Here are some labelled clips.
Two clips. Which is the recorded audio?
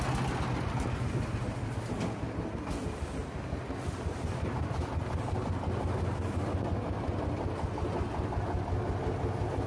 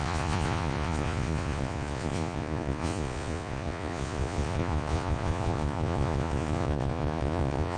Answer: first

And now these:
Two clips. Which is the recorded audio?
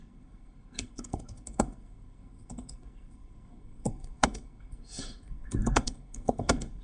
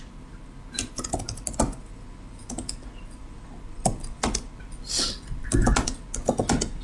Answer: second